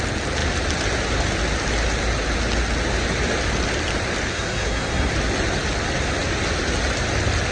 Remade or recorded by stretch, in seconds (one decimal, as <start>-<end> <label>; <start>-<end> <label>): 0.0-4.3 recorded; 4.3-5.1 remade; 5.1-7.5 recorded